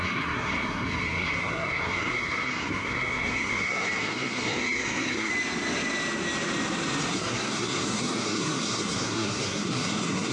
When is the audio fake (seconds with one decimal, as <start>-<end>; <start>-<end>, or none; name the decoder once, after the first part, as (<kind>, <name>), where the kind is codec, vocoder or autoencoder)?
0.0-5.3 (codec, SNAC); 7.1-10.3